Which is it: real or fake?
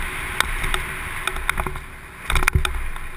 real